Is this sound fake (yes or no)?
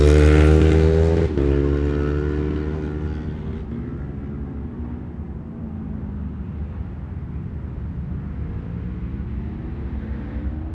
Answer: no